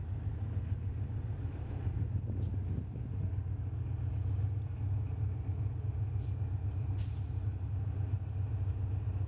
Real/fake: real